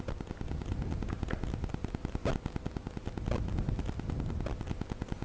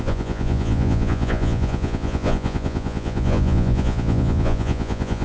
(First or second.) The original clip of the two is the first